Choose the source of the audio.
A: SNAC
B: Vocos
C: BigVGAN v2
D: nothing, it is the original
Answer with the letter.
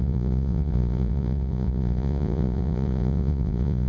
B